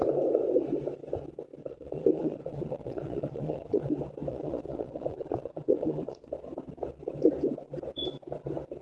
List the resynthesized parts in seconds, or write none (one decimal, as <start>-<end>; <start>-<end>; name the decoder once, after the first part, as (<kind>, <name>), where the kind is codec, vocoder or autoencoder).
1.6-3.9 (vocoder, Vocos); 4.3-6.3